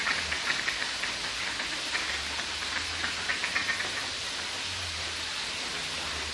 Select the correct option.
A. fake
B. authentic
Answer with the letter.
B